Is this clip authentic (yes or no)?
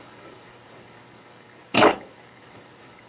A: no